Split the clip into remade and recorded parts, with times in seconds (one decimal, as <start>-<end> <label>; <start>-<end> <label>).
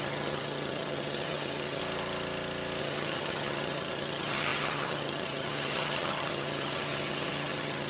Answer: 0.0-1.8 remade; 1.8-2.8 recorded; 2.8-7.9 remade